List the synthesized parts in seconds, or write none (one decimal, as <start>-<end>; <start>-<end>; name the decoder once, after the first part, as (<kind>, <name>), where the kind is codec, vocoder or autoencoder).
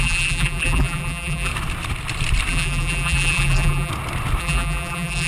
0.0-1.5 (vocoder, BigVGAN v2); 2.5-3.9; 4.4-5.3